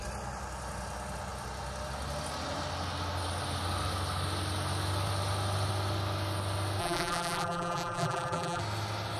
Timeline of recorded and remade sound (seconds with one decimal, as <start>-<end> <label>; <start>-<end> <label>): 0.0-6.8 recorded; 6.8-8.6 remade; 8.6-9.2 recorded